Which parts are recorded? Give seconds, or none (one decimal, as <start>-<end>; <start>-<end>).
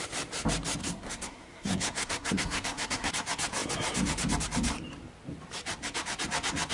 0.0-0.8; 3.1-6.7